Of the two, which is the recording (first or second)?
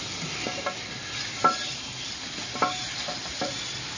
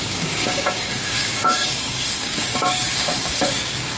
first